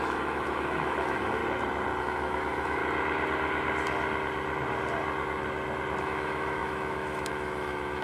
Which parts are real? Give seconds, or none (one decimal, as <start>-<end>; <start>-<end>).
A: 1.4-2.0; 2.8-6.0